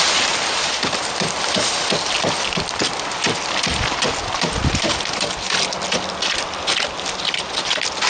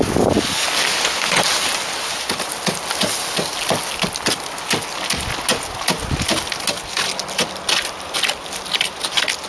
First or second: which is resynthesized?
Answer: first